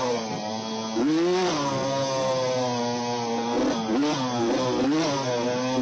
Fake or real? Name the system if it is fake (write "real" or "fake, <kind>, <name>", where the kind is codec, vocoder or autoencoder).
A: real